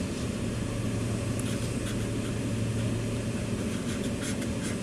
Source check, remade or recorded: recorded